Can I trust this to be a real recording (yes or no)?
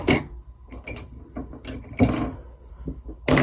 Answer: yes